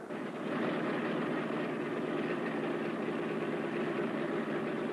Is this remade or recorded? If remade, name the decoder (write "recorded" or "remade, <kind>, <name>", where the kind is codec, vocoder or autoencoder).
recorded